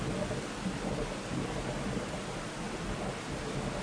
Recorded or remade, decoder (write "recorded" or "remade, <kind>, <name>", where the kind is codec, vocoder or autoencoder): recorded